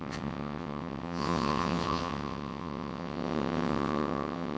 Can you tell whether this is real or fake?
fake